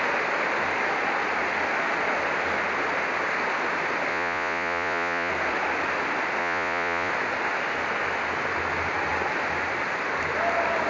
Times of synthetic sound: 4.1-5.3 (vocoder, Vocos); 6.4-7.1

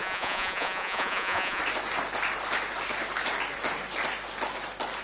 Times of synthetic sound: 0.0-1.6 (vocoder, Vocos)

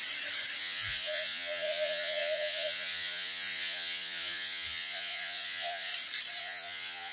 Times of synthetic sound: 0.6-5.9 (vocoder, Vocos); 6.4-7.1